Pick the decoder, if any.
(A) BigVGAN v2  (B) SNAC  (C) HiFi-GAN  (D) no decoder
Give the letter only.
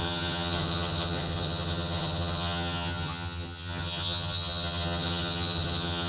C